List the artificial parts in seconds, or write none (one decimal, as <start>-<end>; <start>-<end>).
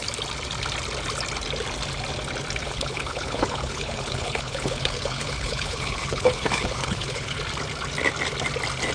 2.6-7.4